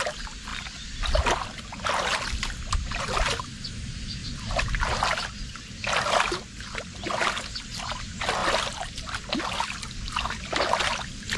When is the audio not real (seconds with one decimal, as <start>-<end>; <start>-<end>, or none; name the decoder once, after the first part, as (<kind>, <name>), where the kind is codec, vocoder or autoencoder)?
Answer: 0.5-3.4 (vocoder, BigVGAN v2); 8.4-9.4

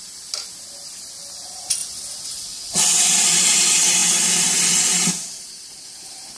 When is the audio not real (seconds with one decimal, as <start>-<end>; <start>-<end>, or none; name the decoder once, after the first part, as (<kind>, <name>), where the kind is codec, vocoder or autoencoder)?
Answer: none

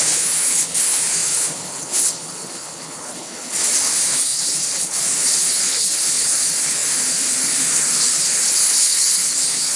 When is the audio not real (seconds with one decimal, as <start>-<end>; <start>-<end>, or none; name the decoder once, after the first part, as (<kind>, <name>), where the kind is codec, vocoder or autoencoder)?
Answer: 0.0-9.8 (codec, HILCodec)